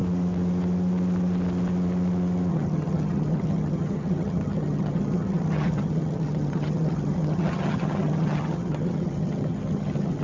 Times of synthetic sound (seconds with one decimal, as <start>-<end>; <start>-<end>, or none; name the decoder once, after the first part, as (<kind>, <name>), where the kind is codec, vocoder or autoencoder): 2.5-10.2 (vocoder, HiFi-GAN)